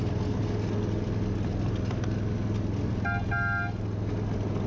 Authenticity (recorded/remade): recorded